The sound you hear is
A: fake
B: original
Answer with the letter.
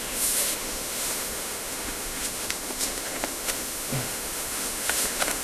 A